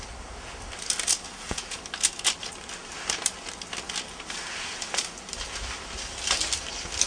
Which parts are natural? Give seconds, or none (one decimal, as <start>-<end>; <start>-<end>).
0.0-1.3; 1.8-7.1

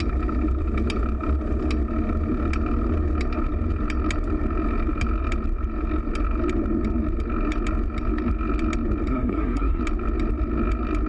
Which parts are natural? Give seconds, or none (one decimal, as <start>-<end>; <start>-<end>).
0.0-9.1; 9.8-11.1

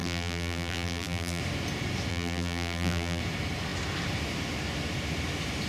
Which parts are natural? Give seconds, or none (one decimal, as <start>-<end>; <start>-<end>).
1.4-2.1; 3.2-5.7

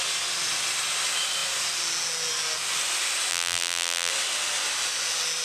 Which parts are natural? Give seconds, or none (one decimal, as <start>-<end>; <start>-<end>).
0.0-3.3; 4.1-5.4

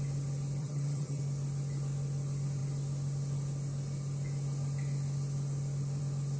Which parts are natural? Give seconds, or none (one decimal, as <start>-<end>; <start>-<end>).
0.0-0.6; 1.2-6.4

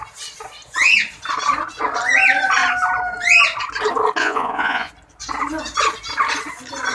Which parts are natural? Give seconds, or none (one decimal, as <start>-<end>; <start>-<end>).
0.0-4.2; 4.9-6.9